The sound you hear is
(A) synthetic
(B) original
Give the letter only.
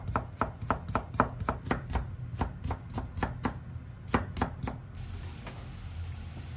B